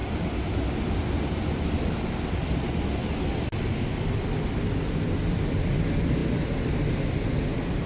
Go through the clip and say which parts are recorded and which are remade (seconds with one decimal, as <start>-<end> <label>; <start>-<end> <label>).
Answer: 0.0-7.9 recorded